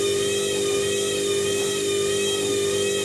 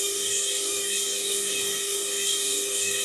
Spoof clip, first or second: second